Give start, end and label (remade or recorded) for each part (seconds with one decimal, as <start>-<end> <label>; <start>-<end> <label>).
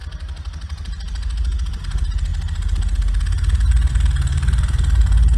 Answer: 0.0-5.4 recorded